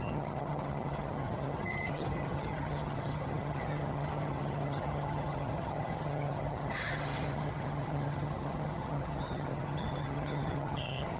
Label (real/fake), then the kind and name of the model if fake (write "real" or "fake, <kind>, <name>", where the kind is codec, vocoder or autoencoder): fake, vocoder, HiFi-GAN